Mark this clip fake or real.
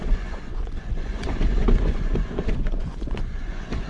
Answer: fake